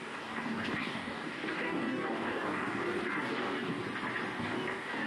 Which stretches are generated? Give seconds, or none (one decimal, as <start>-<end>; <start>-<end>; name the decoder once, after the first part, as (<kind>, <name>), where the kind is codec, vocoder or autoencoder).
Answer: 0.0-3.8 (codec, DAC); 4.4-5.1